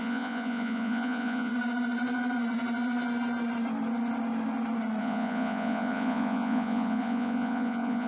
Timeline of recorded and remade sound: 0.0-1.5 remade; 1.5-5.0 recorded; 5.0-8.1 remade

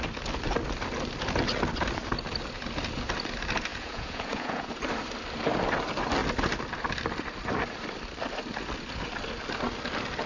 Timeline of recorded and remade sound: 0.0-3.7 recorded; 3.7-4.7 remade; 4.7-10.3 recorded